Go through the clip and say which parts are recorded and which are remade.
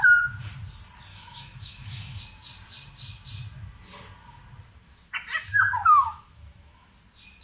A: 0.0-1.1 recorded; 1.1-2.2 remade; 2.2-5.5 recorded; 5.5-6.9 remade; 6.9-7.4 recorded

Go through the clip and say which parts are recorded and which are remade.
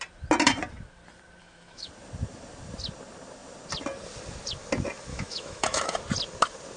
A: 0.0-1.4 recorded; 1.4-1.9 remade; 1.9-5.1 recorded; 5.1-6.0 remade; 6.0-6.8 recorded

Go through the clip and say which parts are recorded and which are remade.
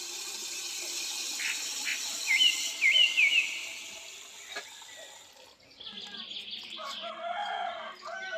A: 0.0-8.4 recorded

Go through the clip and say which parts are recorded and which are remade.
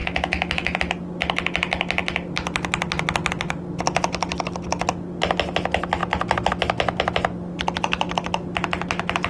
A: 0.0-0.8 remade; 0.8-9.3 recorded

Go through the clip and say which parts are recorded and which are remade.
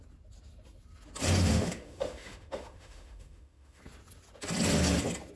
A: 0.0-1.5 recorded; 1.5-3.8 remade; 3.8-5.4 recorded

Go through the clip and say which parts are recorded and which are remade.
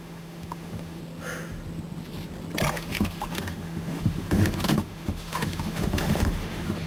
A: 0.0-1.0 remade; 1.0-2.7 recorded; 2.7-6.9 remade